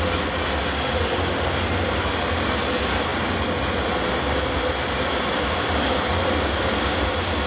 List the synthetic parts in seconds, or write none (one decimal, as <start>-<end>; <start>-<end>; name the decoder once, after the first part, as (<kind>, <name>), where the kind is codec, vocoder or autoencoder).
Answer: none